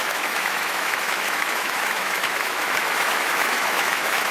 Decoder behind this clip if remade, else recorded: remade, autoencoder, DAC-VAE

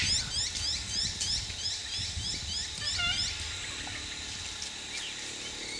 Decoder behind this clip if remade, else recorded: recorded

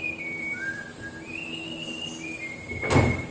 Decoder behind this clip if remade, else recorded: recorded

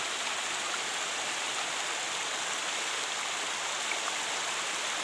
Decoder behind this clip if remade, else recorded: recorded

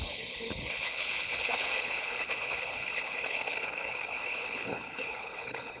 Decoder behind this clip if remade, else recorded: remade, codec, HILCodec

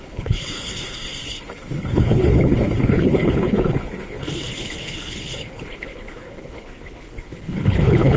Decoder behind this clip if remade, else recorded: remade, codec, HILCodec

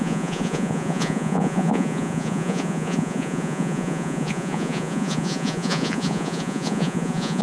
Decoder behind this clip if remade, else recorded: remade, vocoder, Vocos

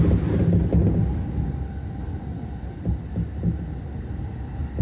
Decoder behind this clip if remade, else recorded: recorded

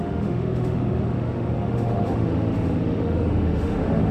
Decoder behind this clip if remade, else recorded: remade, autoencoder, DAC-VAE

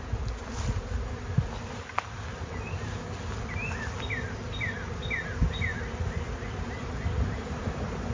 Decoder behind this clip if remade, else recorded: recorded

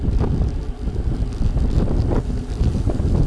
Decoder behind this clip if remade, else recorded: recorded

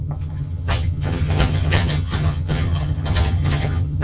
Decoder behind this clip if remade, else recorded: remade, vocoder, HiFi-GAN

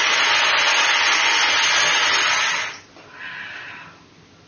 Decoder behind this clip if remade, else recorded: recorded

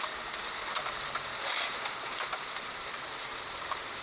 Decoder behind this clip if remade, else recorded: remade, vocoder, BigVGAN v2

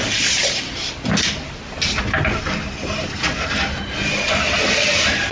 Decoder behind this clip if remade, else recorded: recorded